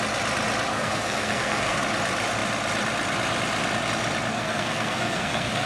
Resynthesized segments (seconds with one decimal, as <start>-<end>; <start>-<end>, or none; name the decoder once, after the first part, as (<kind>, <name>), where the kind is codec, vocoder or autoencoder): 0.7-1.8 (codec, SNAC); 4.3-5.7